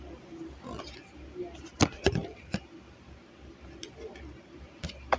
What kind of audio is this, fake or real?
real